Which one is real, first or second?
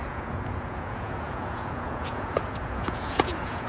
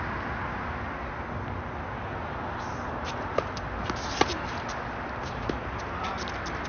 second